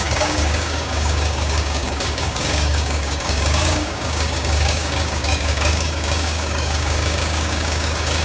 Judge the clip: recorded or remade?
remade